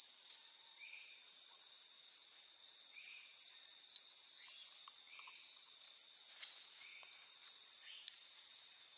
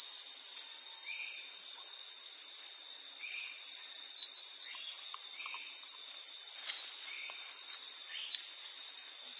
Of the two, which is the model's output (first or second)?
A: first